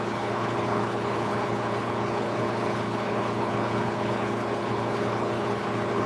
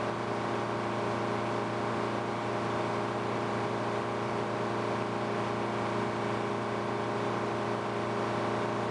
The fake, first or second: first